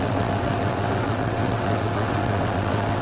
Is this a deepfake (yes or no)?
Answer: yes